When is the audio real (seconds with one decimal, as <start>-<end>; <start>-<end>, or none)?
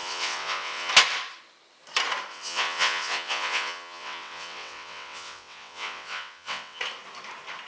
0.9-2.3; 6.8-7.7